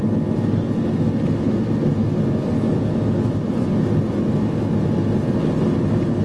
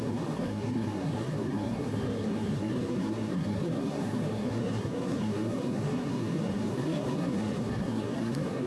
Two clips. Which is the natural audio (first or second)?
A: first